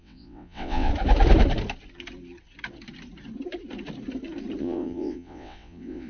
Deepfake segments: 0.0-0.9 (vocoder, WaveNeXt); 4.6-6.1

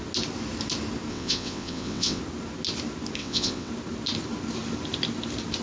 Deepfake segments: 1.1-2.2 (vocoder, WaveNeXt); 3.2-3.7

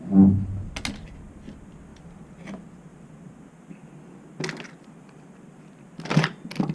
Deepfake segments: none